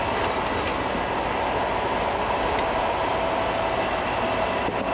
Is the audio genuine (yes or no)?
yes